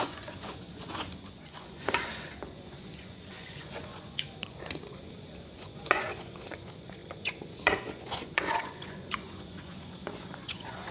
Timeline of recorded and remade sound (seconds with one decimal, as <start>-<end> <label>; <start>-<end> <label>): 0.0-10.9 remade